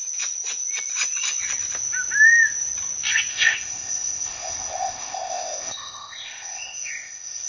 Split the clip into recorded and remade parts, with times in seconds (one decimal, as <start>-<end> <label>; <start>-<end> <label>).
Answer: 0.0-3.3 recorded; 3.3-7.5 remade